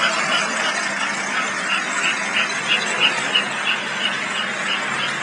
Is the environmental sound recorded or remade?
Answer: recorded